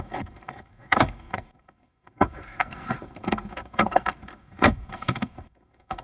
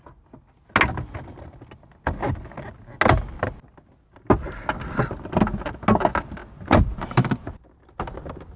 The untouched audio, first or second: second